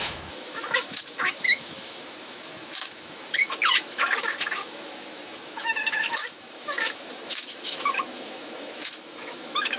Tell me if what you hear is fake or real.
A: fake